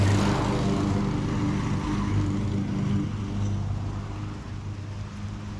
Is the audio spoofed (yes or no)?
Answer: no